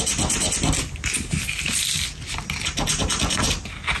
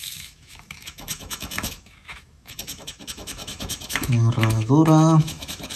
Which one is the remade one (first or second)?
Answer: second